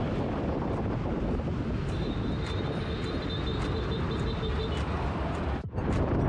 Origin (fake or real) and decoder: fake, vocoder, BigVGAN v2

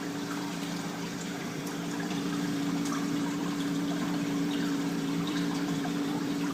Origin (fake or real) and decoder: fake, vocoder, BigVGAN v2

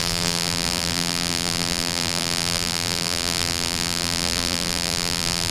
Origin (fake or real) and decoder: fake, vocoder, BigVGAN v2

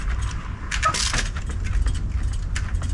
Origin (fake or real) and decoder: real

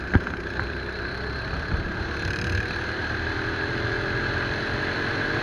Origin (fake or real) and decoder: fake, vocoder, BigVGAN v2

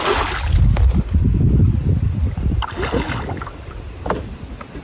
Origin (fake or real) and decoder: real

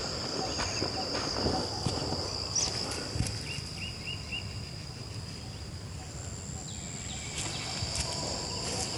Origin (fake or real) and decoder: real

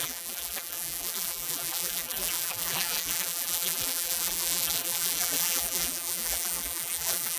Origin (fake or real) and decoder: fake, vocoder, BigVGAN v2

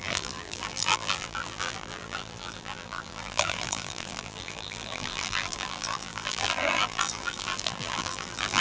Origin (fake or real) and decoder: fake, vocoder, BigVGAN v2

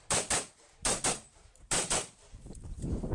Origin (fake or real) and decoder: fake, vocoder, BigVGAN v2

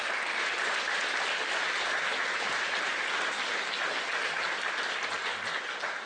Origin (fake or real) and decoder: real